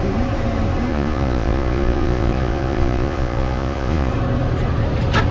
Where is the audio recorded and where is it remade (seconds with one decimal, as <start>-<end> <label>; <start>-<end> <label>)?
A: 0.0-0.9 recorded; 0.9-4.1 remade; 4.1-5.3 recorded